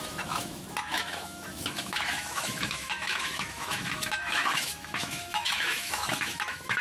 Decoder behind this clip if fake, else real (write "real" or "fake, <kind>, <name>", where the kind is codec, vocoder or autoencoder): fake, autoencoder, DAC-VAE